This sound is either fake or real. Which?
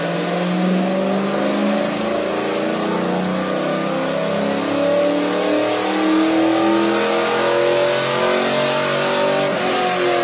real